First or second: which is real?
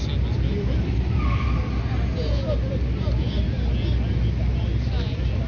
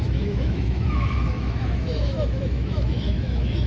first